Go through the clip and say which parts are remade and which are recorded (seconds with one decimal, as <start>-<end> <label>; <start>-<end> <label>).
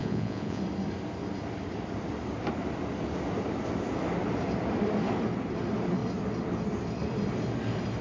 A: 0.0-0.6 remade; 0.6-8.0 recorded